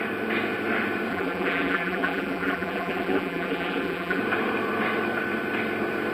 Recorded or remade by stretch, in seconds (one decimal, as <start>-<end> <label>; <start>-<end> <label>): 0.0-1.1 recorded; 1.1-4.2 remade; 4.2-6.1 recorded